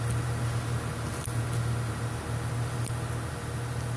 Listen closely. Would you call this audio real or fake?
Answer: real